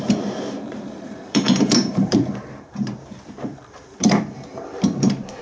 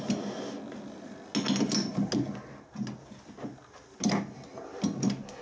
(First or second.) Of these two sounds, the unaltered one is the second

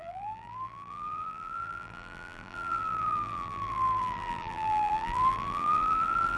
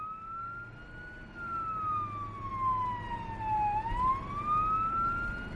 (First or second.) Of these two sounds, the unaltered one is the second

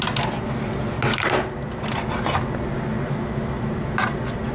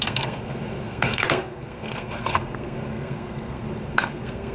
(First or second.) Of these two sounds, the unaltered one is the first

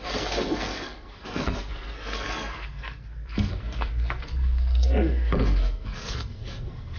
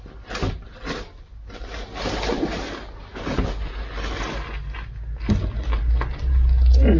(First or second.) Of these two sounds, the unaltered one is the second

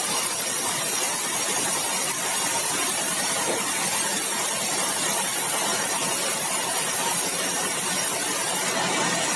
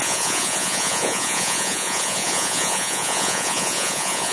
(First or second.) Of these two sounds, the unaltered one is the first